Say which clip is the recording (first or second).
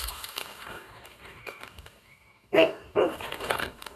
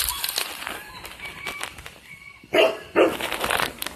second